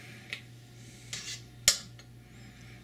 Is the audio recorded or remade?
recorded